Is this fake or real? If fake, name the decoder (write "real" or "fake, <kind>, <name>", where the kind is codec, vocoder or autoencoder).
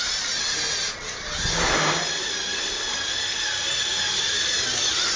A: real